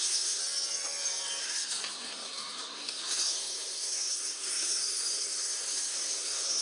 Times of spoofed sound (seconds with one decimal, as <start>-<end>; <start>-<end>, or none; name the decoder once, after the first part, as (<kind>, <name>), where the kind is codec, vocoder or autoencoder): 0.0-0.4 (codec, SNAC); 1.4-6.6